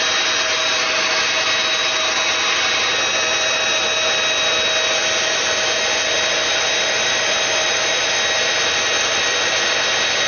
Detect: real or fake real